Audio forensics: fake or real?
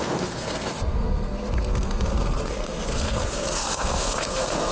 fake